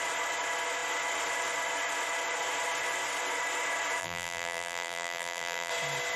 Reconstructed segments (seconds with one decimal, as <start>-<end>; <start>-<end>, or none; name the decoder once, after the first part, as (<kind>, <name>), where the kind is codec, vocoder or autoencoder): 4.0-5.7 (vocoder, BigVGAN v2)

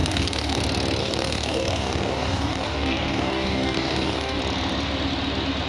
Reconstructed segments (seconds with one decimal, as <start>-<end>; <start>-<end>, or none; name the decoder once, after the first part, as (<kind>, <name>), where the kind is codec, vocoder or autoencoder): 0.0-0.6 (codec, DAC); 1.0-4.4

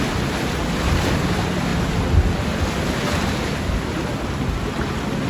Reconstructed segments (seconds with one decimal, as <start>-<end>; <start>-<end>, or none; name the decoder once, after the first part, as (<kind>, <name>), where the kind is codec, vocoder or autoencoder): 0.0-1.7 (vocoder, BigVGAN v2)

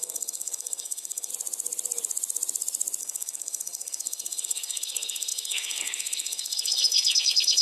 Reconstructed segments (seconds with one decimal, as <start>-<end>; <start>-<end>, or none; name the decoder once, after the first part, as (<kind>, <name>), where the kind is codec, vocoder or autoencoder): 0.0-1.3 (codec, SNAC); 3.0-7.6

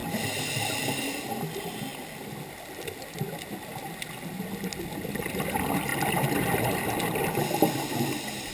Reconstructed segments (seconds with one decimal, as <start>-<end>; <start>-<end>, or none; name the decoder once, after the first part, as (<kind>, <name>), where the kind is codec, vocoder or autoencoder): none

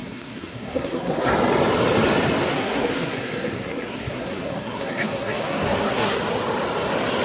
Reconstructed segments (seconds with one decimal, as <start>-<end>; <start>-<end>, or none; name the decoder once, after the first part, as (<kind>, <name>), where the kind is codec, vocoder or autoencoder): 0.0-1.3 (codec, SNAC); 2.5-6.2